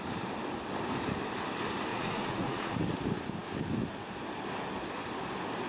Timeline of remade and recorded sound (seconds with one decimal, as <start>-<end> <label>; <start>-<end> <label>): 0.0-1.9 recorded; 1.9-2.8 remade; 2.8-5.7 recorded